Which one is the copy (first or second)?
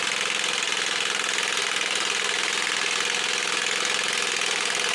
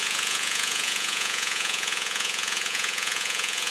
second